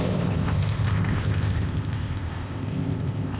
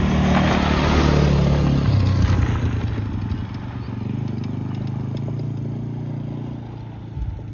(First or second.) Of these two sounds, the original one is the second